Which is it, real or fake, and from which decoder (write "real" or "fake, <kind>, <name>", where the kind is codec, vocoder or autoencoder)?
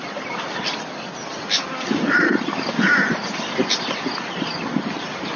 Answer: real